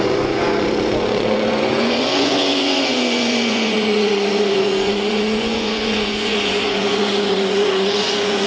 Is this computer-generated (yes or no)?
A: yes